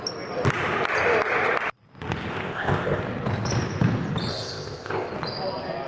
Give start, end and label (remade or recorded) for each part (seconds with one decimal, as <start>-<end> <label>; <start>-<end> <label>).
0.0-2.3 recorded; 2.3-3.0 remade; 3.0-4.3 recorded; 4.3-5.1 remade; 5.1-5.9 recorded